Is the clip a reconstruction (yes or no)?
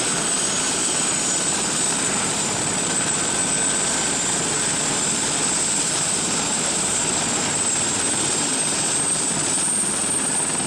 no